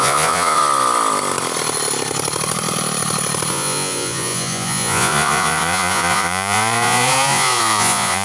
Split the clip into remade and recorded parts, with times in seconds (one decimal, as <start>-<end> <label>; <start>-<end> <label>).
0.0-0.6 remade; 0.6-3.5 recorded; 3.5-8.2 remade